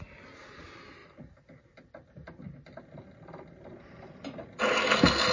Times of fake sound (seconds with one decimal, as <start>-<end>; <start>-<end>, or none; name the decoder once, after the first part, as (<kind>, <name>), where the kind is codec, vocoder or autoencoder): none